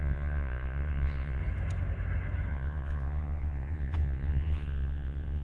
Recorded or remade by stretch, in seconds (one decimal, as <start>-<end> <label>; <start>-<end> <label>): 0.0-1.4 remade; 1.4-2.5 recorded; 2.5-5.4 remade